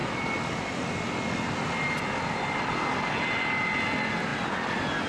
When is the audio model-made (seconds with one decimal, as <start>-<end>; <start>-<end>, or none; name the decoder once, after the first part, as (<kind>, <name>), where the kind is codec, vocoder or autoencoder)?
none